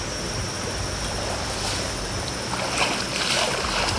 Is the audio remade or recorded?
recorded